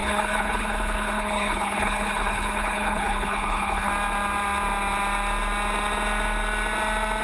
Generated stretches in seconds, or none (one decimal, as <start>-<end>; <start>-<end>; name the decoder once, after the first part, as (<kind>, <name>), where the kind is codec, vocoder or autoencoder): 0.0-3.9 (codec, HILCodec)